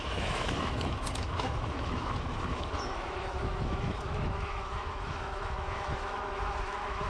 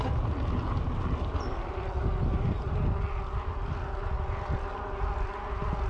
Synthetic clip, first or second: first